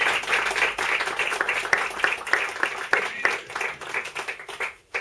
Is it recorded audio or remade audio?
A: recorded